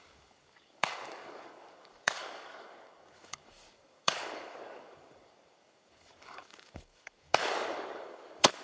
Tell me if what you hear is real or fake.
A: fake